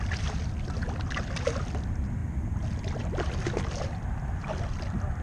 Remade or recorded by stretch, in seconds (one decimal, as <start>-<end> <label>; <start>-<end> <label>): 0.0-5.2 recorded